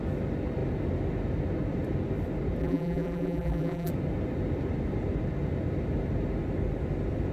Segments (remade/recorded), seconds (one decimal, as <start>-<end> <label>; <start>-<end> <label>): 0.0-2.6 recorded; 2.6-3.9 remade; 3.9-7.3 recorded